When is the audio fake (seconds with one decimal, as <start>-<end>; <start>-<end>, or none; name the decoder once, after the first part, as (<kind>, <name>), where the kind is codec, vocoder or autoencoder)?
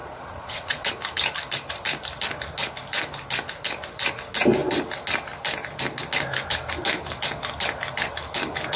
0.0-0.9 (vocoder, Vocos)